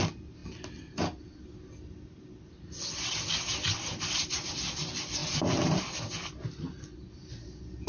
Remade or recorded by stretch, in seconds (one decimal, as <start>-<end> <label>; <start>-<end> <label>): 0.0-7.9 recorded